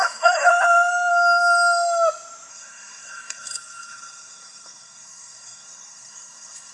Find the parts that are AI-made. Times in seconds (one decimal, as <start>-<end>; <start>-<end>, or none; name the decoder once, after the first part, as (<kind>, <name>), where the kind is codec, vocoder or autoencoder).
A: 0.0-0.5 (codec, SNAC); 2.5-6.7